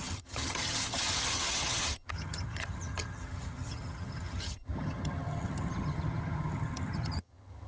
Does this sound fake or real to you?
fake